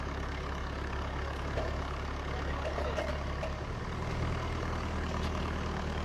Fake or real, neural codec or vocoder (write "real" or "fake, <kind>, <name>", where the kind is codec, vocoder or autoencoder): fake, codec, DAC